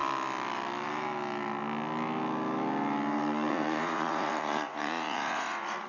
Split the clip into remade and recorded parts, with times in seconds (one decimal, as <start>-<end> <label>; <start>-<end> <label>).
0.0-3.5 recorded; 3.5-5.9 remade